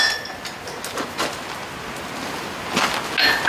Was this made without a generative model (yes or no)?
yes